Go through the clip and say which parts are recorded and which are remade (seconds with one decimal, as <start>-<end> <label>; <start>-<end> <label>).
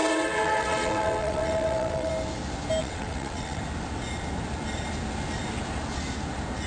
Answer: 0.0-2.1 remade; 2.1-2.8 recorded; 2.8-3.6 remade; 3.6-6.7 recorded